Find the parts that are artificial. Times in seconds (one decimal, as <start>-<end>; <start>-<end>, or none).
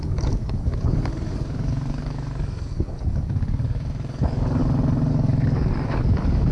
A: 0.0-4.6; 5.1-6.5